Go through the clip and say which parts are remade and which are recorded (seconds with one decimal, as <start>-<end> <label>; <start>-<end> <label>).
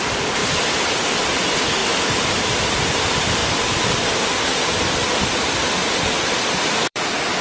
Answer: 0.0-0.4 remade; 0.4-1.4 recorded; 1.4-1.8 remade; 1.8-2.8 recorded; 2.8-3.4 remade; 3.4-4.0 recorded; 4.0-7.4 remade